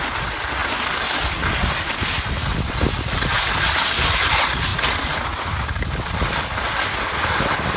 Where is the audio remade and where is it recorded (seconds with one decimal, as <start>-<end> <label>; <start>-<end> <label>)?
0.0-7.8 recorded